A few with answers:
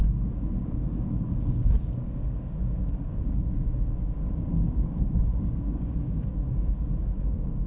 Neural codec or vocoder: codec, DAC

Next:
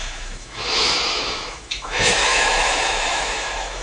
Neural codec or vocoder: autoencoder, DAC-VAE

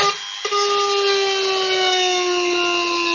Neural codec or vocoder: none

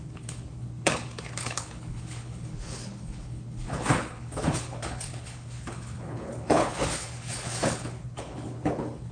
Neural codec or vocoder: codec, HILCodec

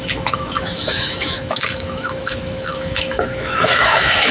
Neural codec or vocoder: autoencoder, DAC-VAE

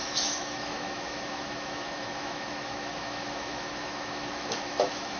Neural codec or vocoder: autoencoder, DAC-VAE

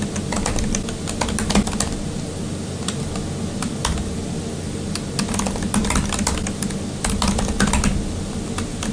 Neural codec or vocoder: none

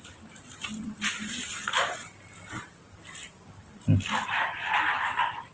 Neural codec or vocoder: none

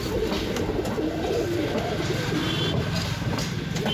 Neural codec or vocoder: none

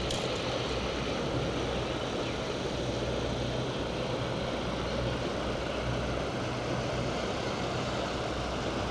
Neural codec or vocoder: none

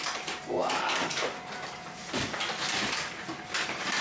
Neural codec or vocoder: none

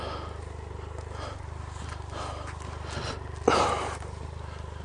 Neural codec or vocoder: none